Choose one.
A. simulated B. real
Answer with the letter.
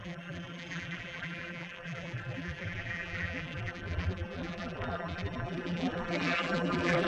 A